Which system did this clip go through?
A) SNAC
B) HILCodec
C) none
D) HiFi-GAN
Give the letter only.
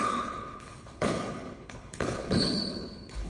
B